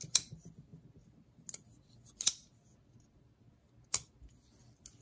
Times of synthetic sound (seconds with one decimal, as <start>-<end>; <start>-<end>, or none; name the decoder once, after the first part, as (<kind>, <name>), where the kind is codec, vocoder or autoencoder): none